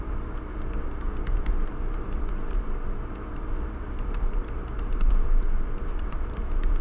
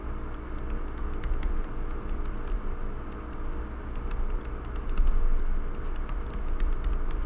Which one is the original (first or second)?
second